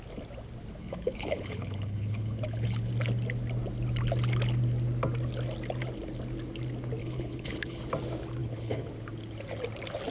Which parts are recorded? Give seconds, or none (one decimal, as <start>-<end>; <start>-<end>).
0.0-0.8; 2.9-7.0; 7.8-8.4; 8.9-10.1